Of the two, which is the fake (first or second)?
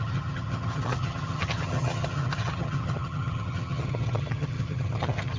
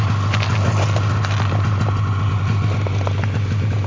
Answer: first